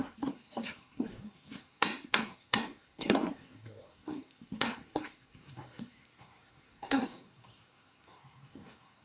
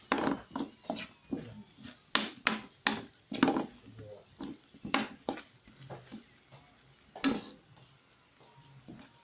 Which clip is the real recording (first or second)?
second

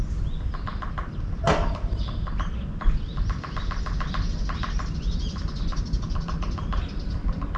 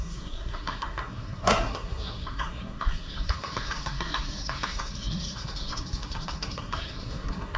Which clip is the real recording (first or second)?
first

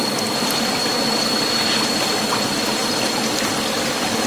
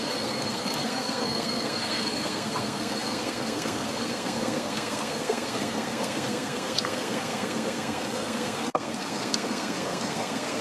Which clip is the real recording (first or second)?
first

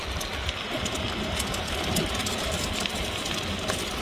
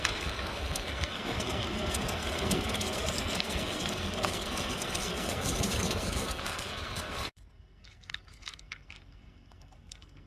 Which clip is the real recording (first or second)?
first